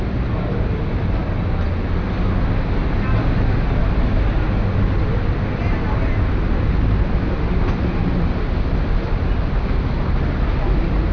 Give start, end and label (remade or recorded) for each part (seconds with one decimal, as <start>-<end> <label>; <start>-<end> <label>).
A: 0.0-11.1 recorded